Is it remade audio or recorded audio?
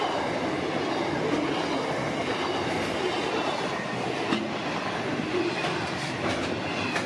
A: recorded